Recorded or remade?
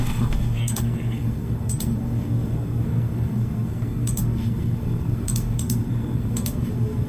remade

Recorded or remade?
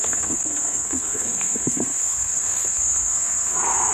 remade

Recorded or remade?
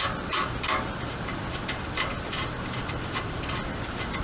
remade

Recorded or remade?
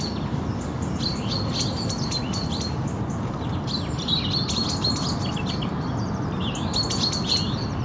recorded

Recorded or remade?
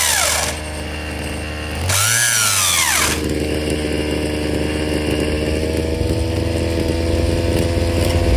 recorded